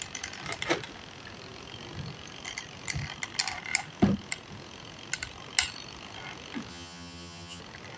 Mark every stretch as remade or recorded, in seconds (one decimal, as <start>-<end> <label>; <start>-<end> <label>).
0.0-6.7 recorded; 6.7-7.6 remade; 7.6-8.0 recorded